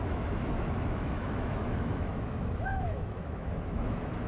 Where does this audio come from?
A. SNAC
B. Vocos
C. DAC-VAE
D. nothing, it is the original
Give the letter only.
C